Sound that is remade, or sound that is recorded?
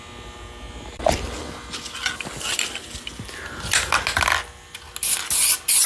recorded